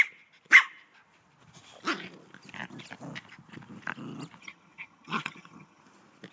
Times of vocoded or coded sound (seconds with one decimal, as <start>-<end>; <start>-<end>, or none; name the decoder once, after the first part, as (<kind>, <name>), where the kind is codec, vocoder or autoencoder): 4.4-5.8 (vocoder, HiFi-GAN)